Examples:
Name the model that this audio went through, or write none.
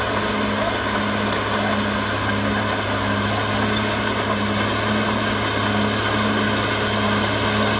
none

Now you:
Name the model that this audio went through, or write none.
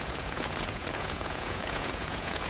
vocoder, Vocos